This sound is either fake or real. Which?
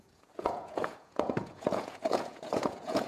fake